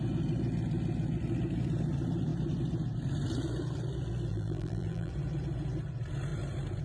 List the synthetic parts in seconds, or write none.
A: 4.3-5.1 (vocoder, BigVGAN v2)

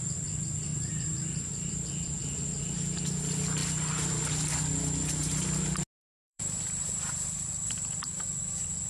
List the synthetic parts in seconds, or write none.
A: 0.7-1.7 (vocoder, BigVGAN v2); 3.6-4.5; 6.0-7.5

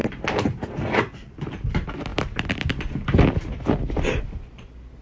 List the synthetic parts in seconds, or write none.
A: 0.0-1.5 (vocoder, BigVGAN v2); 2.1-4.1

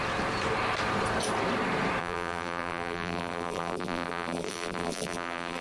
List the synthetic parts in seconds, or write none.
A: 2.0-5.6 (vocoder, BigVGAN v2)